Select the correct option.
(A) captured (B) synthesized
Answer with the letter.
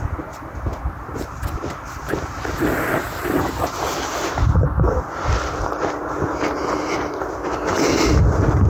A